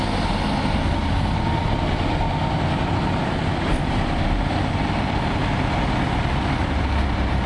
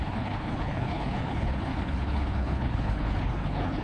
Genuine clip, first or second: first